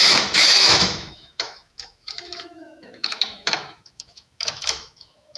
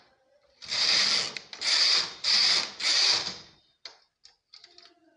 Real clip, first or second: second